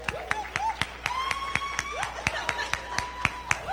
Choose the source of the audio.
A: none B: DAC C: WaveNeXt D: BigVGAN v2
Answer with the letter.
A